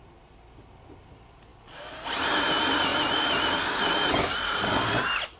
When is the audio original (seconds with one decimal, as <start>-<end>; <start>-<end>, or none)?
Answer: 0.0-2.9; 4.9-5.4